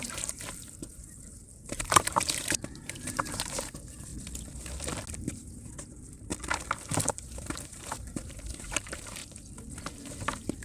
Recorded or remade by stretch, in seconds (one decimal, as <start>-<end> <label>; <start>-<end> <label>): 0.0-4.1 remade; 4.1-5.1 recorded; 5.1-6.3 remade; 6.3-7.1 recorded; 7.1-9.2 remade; 9.2-9.8 recorded; 9.8-10.6 remade